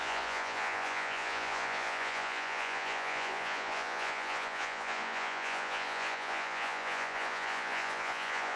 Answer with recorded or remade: remade